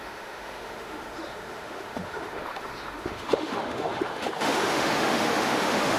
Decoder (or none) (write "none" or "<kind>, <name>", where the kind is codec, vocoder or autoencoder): autoencoder, DAC-VAE